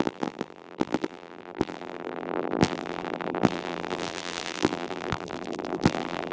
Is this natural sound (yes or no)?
no